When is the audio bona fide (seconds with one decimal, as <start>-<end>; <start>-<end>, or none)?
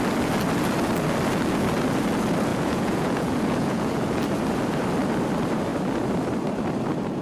0.0-2.5; 4.2-7.2